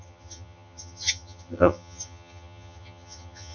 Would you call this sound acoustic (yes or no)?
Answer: no